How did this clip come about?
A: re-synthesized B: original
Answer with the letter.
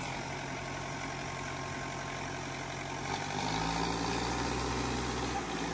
B